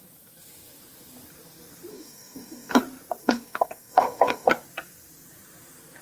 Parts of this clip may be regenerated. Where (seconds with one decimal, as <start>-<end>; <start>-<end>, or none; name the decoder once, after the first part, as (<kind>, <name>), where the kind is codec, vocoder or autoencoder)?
1.9-2.8 (codec, DAC); 3.2-4.5